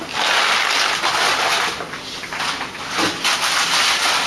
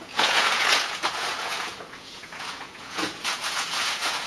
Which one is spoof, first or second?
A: second